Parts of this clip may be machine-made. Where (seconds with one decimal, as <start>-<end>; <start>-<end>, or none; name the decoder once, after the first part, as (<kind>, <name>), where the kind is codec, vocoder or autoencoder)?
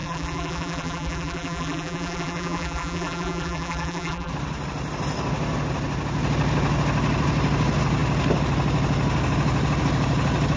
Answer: 0.0-4.3 (vocoder, BigVGAN v2)